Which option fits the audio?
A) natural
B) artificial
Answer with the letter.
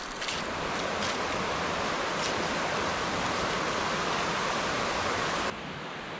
A